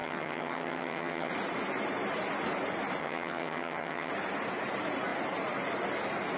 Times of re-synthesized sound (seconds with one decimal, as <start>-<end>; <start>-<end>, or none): 0.0-1.3; 3.0-4.1

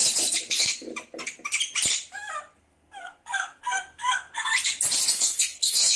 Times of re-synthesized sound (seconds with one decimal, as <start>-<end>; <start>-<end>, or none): 0.5-0.9; 2.6-4.5; 5.1-6.0

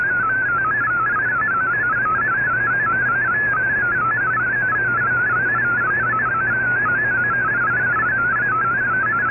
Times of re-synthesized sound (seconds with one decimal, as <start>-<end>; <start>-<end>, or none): none

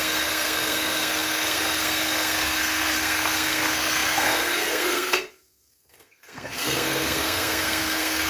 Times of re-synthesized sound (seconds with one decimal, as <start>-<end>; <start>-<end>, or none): 0.0-8.3

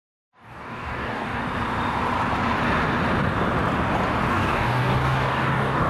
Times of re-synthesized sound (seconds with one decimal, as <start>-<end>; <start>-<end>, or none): 0.0-1.4; 4.3-5.9

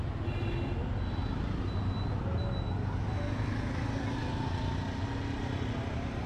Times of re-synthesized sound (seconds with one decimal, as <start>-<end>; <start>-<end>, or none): none

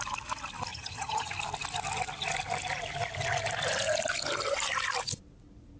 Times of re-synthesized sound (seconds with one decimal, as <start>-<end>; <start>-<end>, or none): 0.7-1.3